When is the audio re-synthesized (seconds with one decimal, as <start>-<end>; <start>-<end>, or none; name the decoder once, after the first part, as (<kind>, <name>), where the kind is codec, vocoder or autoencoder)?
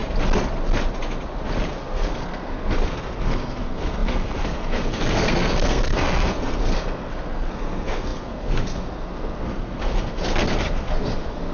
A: 1.7-11.5 (codec, SNAC)